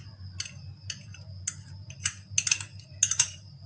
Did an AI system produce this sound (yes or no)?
no